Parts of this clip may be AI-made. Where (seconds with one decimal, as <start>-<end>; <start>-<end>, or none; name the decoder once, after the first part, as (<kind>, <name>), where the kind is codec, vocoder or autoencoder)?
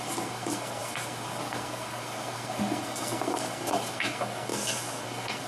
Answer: 0.0-5.5 (codec, SNAC)